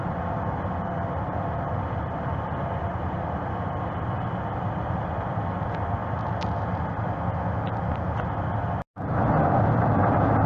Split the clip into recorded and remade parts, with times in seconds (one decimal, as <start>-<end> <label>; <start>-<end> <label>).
0.0-10.5 recorded